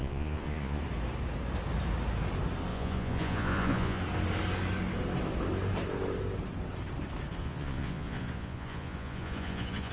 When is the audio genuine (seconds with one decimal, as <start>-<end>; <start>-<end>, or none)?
0.8-2.7; 4.0-7.4